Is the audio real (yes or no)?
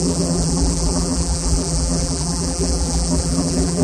no